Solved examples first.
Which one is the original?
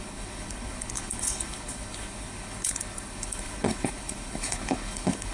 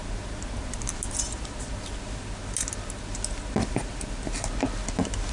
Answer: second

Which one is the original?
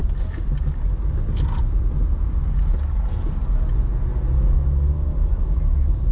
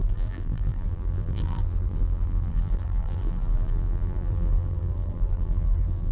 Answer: first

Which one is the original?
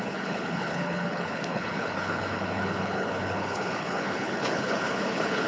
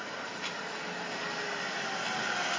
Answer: second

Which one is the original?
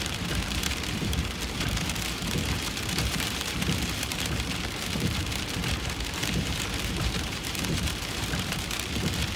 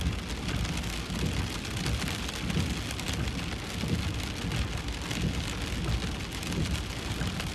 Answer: second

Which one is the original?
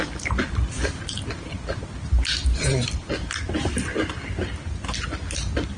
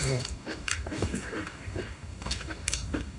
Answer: first